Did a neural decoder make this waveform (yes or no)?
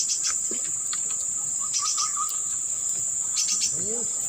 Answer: no